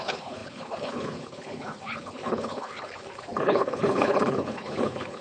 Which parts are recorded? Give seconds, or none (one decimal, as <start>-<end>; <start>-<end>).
none